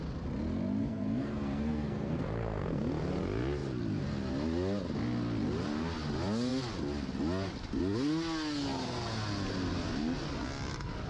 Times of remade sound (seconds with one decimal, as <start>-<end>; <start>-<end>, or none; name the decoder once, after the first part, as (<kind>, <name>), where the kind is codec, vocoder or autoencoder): 0.8-2.9 (codec, SNAC)